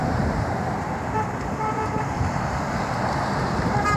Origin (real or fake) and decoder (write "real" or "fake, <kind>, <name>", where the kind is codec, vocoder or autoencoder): fake, vocoder, BigVGAN v2